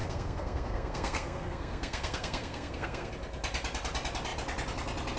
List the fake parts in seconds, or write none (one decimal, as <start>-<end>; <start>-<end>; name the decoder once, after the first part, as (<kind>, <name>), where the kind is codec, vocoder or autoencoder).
0.0-3.1 (codec, SNAC)